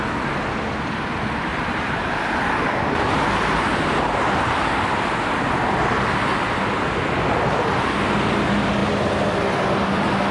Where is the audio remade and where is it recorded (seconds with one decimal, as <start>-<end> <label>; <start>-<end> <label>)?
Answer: 0.0-1.5 recorded; 1.5-2.1 remade; 2.1-10.3 recorded